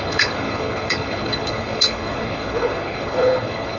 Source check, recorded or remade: remade